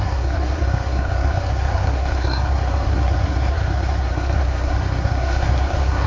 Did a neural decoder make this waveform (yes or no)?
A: yes